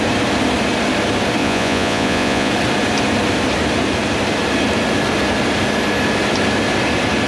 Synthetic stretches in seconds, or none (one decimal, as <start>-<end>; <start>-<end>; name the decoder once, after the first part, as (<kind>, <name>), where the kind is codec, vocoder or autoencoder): 1.4-2.5 (vocoder, Vocos)